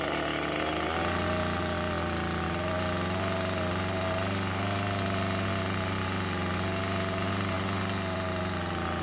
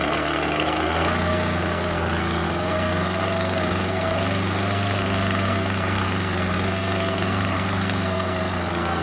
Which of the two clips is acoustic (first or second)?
first